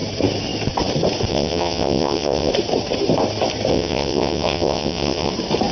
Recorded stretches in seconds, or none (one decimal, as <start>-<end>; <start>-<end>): 0.0-1.3; 2.5-3.7; 5.3-5.7